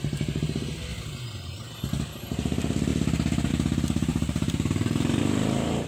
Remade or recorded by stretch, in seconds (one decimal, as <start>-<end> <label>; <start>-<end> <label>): 0.0-4.1 recorded; 4.1-5.2 remade; 5.2-5.9 recorded